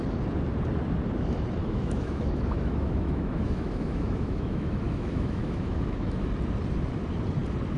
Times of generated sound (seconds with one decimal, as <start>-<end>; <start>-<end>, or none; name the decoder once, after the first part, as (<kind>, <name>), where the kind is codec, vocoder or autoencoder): 1.6-6.3 (autoencoder, DAC-VAE)